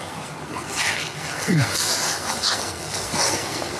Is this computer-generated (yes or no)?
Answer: yes